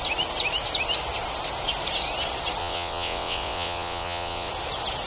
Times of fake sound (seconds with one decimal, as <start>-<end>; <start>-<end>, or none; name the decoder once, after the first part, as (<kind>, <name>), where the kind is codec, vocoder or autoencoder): 2.6-4.5 (vocoder, WaveNeXt)